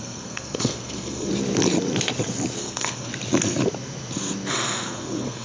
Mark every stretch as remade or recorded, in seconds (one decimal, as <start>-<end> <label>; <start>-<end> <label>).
0.0-1.3 remade; 1.3-2.6 recorded; 2.6-3.1 remade; 3.1-4.5 recorded; 4.5-5.4 remade